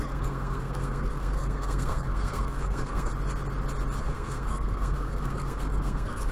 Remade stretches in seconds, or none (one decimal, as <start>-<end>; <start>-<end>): 0.0-3.1; 4.0-6.3